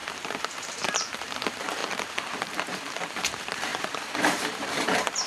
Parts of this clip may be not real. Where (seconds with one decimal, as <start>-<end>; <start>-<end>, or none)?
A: 0.0-5.3